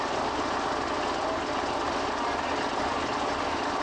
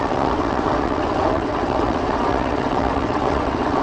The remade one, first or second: second